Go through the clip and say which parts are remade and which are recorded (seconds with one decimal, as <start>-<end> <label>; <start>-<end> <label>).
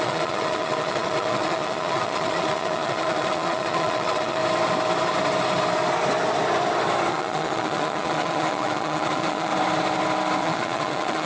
0.0-4.4 remade; 4.4-7.1 recorded; 7.1-9.5 remade; 9.5-10.4 recorded; 10.4-11.3 remade